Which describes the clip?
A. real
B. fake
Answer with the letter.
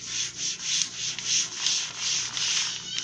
A